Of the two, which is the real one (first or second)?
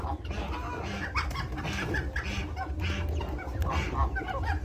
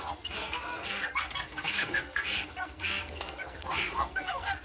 first